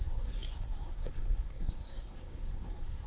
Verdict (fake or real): fake